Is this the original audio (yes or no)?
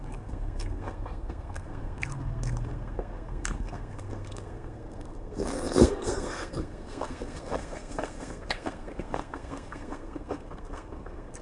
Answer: no